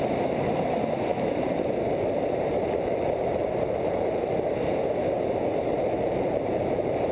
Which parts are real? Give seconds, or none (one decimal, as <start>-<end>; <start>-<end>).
0.0-1.1; 4.3-5.7

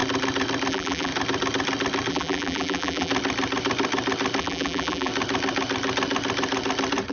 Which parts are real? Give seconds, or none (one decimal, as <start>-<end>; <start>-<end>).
0.0-0.7; 1.1-2.1; 3.1-4.4; 5.1-7.1